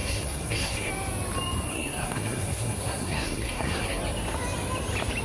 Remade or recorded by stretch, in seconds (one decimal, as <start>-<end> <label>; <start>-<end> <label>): 0.0-0.9 remade; 0.9-1.7 recorded; 1.7-4.0 remade; 4.0-5.2 recorded

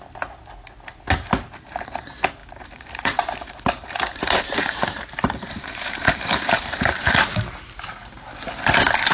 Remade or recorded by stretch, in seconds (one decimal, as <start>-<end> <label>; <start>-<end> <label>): 0.0-2.4 recorded; 2.4-7.6 remade; 7.6-9.1 recorded

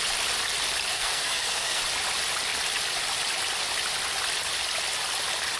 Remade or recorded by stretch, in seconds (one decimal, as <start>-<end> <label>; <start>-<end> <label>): 0.0-0.9 recorded; 0.9-1.8 remade; 1.8-5.6 recorded

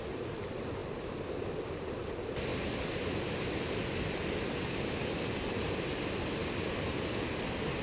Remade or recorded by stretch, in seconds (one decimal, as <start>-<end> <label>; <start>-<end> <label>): 0.0-7.8 recorded

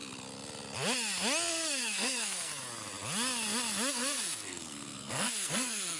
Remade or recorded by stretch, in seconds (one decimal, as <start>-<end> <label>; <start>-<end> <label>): 0.0-1.5 recorded; 1.5-2.5 remade; 2.5-3.9 recorded; 3.9-6.0 remade

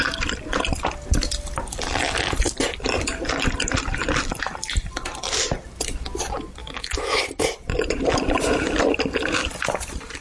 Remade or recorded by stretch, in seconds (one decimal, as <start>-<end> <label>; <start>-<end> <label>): 0.0-6.6 recorded; 6.6-7.2 remade; 7.2-10.2 recorded